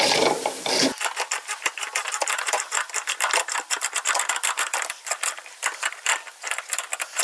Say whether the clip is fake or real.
fake